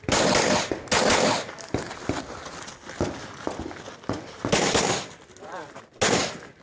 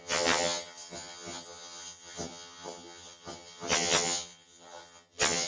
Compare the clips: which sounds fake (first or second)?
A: second